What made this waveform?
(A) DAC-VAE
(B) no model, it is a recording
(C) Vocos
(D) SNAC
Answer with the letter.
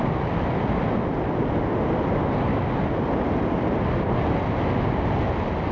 B